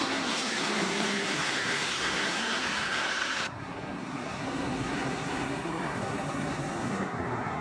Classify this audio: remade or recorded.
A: remade